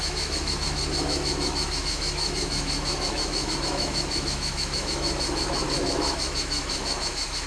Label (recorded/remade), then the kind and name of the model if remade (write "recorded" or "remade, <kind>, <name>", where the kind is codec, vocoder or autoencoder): remade, autoencoder, DAC-VAE